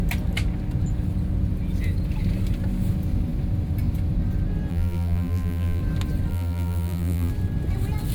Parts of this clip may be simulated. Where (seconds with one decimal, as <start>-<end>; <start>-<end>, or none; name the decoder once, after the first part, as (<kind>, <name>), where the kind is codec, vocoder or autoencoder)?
4.7-5.8 (vocoder, BigVGAN v2); 6.3-7.3